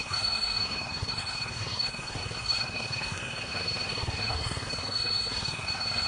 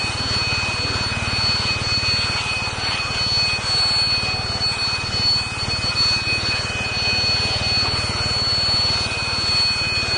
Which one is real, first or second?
second